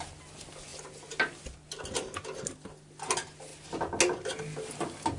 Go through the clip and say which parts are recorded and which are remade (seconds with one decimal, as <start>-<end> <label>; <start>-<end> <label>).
0.0-5.2 recorded